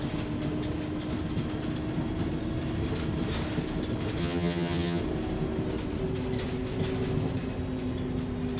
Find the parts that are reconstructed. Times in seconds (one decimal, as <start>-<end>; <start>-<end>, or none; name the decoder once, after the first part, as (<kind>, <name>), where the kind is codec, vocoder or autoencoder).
4.2-5.0 (vocoder, HiFi-GAN)